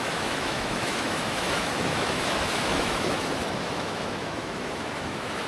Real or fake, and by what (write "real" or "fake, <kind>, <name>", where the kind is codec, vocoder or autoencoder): fake, autoencoder, DAC-VAE